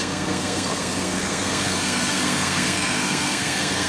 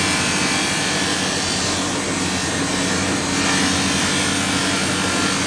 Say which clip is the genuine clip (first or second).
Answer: second